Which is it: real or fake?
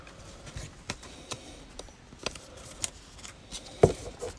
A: real